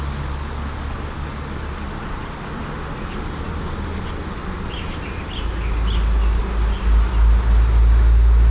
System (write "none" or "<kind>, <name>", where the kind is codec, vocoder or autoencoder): none